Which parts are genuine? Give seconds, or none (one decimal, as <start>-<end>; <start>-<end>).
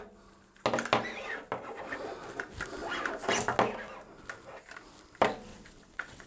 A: 0.0-5.5